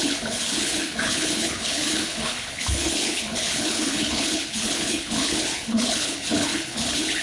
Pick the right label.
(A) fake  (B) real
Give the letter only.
A